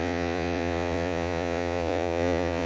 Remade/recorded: remade